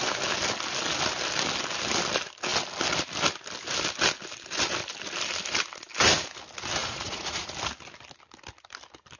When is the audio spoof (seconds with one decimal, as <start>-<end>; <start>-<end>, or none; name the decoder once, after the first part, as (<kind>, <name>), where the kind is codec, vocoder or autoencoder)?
6.8-7.5 (vocoder, Vocos)